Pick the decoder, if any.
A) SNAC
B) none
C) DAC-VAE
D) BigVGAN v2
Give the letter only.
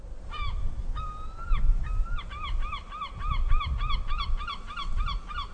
B